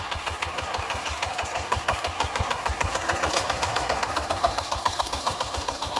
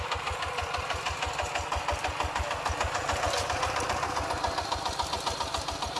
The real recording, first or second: second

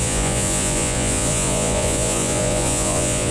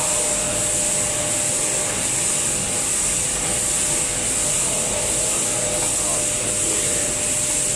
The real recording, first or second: second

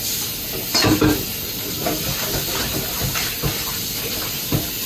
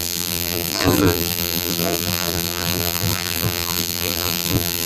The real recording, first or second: first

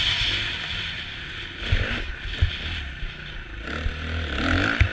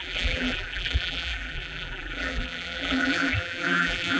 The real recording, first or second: first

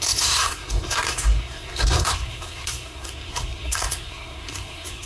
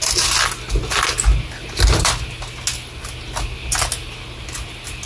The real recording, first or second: second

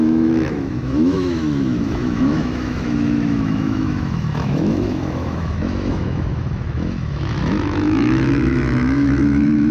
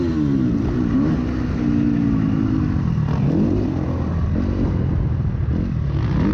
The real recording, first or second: second